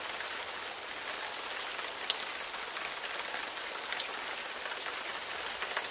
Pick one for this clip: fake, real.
real